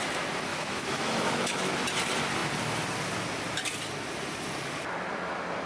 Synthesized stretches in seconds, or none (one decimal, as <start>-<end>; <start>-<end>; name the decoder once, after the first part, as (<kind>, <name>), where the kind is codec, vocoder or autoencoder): 0.5-1.7 (autoencoder, DAC-VAE)